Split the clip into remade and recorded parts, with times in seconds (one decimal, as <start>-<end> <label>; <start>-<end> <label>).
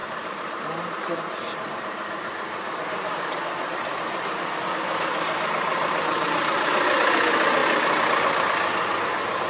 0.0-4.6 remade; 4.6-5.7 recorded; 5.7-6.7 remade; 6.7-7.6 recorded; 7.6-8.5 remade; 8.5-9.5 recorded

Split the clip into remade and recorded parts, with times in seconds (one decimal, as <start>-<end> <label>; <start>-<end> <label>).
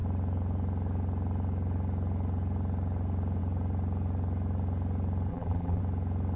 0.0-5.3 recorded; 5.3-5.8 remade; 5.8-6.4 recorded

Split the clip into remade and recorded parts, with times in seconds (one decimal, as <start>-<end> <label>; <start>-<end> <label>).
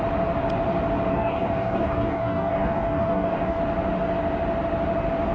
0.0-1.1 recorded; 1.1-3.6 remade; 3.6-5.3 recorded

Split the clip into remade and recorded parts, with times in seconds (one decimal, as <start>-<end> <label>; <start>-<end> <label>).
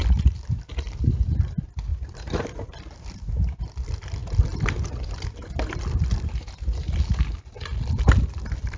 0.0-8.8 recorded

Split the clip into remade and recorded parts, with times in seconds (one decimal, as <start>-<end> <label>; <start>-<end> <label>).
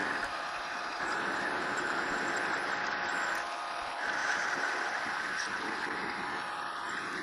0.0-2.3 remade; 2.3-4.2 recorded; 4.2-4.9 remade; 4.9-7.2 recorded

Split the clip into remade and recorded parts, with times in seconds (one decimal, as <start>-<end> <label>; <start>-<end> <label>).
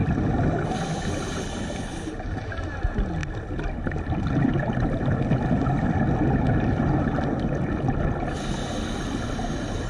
0.0-9.9 recorded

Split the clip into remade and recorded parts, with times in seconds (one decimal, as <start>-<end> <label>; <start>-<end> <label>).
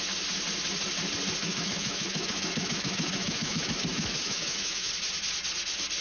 0.0-1.4 recorded; 1.4-4.9 remade; 4.9-6.0 recorded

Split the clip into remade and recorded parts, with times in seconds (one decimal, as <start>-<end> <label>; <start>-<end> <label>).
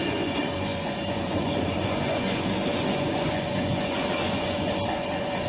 0.0-5.5 remade